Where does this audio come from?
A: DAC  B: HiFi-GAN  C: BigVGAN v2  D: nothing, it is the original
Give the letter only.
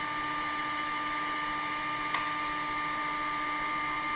D